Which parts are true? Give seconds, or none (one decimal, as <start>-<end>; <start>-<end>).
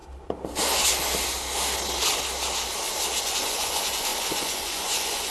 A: 0.0-3.2